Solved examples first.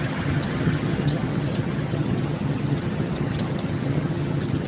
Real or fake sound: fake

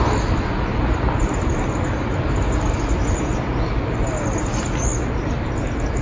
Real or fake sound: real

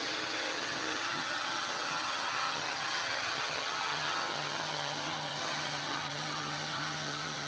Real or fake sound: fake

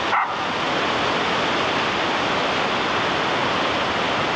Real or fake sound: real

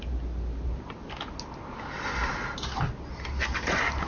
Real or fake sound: real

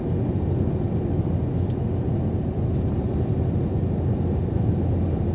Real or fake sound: real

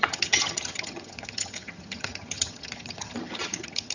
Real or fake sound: fake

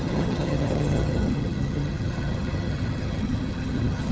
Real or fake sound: fake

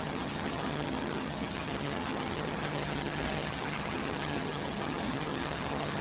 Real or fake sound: fake